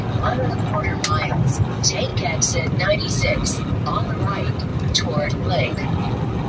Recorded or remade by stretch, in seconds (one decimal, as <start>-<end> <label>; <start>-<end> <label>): 0.0-4.7 recorded; 4.7-5.3 remade; 5.3-6.5 recorded